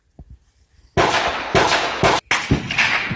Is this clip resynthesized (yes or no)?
no